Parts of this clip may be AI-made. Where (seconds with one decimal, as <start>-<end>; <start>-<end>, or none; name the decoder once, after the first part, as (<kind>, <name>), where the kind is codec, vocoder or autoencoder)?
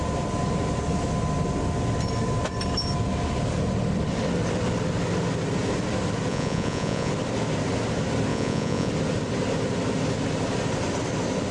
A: 6.3-7.1 (vocoder, Vocos); 8.3-8.9